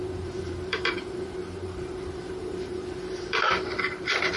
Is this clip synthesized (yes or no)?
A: yes